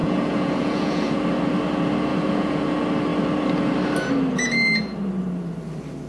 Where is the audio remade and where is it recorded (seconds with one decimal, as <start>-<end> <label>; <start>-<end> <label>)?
0.0-1.2 remade; 1.2-2.1 recorded; 2.1-2.6 remade; 2.6-6.1 recorded